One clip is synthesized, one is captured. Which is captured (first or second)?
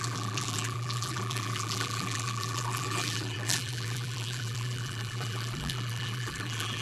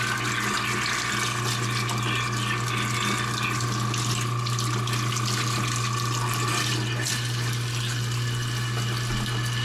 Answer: second